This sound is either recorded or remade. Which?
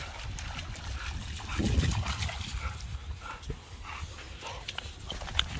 recorded